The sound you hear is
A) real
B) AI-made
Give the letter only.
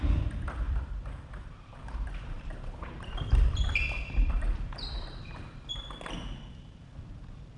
B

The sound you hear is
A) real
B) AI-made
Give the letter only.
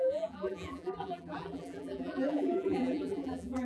B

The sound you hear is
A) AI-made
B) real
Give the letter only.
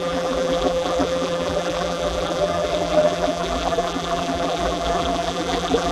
A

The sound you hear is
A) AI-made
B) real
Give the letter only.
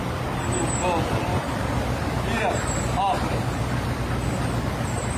B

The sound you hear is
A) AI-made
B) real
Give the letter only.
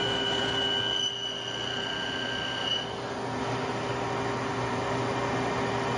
B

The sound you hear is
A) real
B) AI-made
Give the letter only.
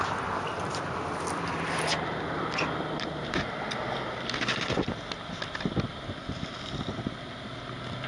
A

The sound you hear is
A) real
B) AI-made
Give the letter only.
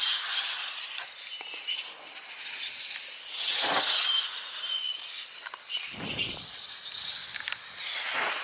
A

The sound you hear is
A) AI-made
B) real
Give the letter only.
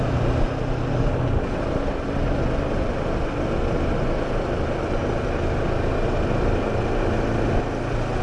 B